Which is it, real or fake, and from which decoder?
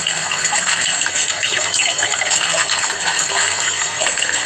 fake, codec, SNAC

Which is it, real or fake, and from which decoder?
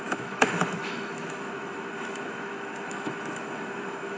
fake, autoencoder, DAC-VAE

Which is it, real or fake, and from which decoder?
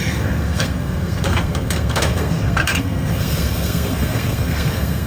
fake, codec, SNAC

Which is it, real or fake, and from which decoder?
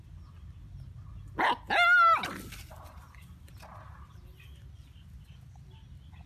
real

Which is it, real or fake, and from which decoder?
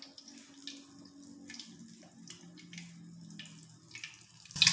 real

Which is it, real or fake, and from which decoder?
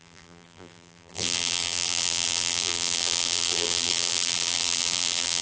fake, vocoder, BigVGAN v2